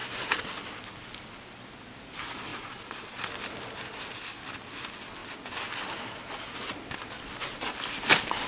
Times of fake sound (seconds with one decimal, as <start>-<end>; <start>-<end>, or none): 0.0-0.5; 2.5-3.3